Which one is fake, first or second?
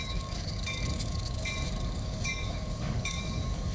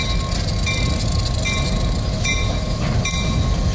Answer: first